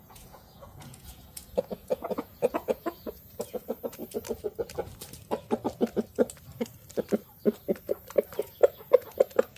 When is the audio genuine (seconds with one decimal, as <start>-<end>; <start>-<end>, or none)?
4.0-8.4